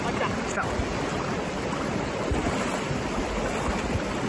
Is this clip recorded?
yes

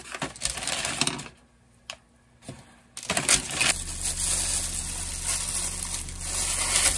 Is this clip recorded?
yes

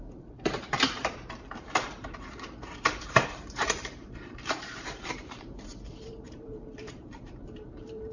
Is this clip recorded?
no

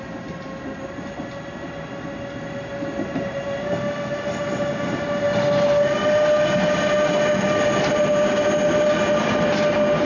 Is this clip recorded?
yes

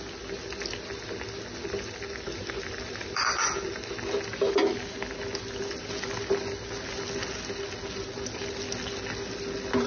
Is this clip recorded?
yes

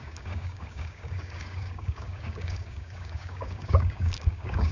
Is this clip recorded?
no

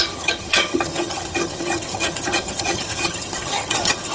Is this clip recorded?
no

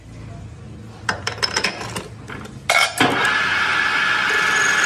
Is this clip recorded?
yes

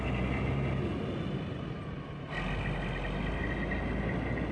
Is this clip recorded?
yes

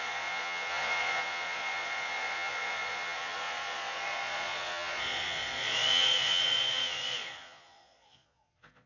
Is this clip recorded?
no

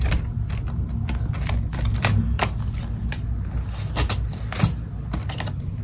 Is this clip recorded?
yes